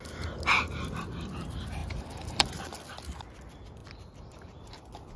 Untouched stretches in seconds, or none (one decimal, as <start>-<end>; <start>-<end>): 0.0-1.8; 2.6-3.8; 4.7-5.2